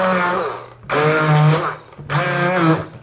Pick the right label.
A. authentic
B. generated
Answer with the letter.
A